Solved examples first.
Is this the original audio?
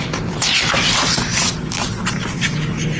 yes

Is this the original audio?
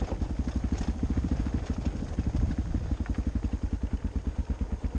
yes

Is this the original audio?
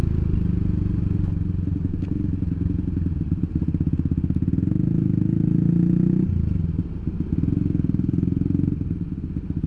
yes